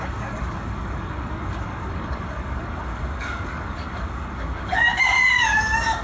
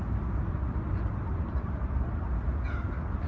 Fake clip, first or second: first